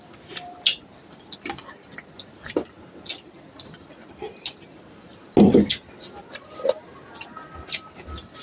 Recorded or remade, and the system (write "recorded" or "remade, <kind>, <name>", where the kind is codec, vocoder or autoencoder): recorded